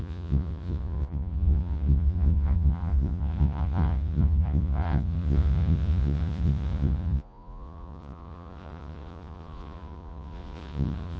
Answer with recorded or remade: remade